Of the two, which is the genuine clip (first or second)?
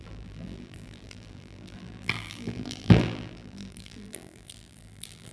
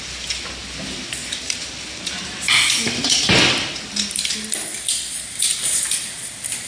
second